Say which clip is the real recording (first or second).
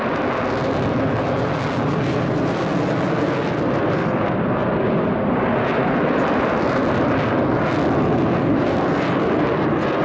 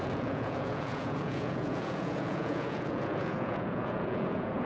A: first